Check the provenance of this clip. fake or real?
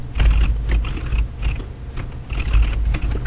real